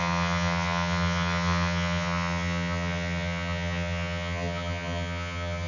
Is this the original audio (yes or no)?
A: no